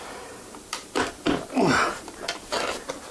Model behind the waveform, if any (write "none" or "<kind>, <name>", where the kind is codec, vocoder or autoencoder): vocoder, BigVGAN v2